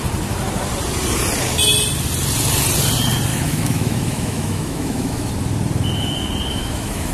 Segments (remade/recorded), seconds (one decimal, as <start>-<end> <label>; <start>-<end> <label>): 0.0-3.3 recorded; 3.3-5.3 remade; 5.3-6.5 recorded; 6.5-7.1 remade